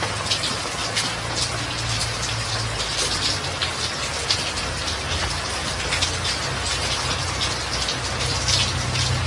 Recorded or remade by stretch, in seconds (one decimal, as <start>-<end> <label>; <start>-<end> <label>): 0.0-9.3 recorded